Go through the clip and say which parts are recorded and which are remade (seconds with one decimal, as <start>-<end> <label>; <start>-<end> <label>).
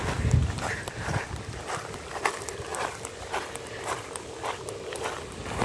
0.0-5.6 recorded